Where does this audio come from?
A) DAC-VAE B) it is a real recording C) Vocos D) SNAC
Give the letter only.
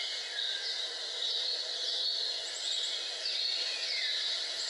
B